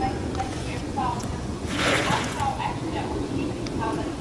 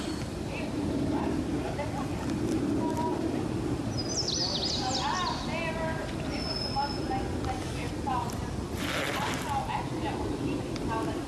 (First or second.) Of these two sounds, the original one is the second